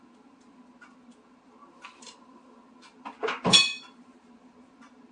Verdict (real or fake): real